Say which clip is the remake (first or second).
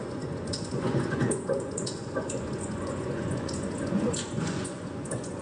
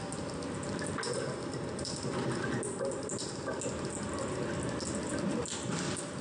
first